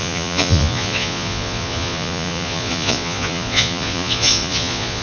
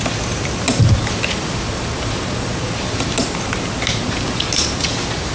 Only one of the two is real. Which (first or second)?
second